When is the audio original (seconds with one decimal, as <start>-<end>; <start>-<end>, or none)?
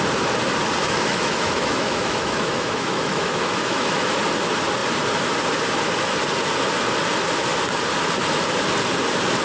0.0-0.8; 4.2-9.4